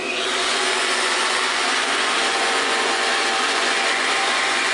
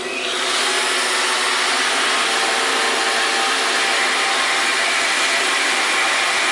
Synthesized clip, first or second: first